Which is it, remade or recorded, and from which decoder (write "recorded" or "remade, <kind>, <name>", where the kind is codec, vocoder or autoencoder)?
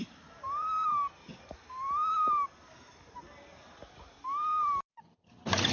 remade, vocoder, BigVGAN v2